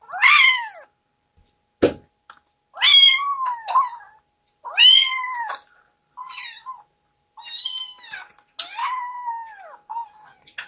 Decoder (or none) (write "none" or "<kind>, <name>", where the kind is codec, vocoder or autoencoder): none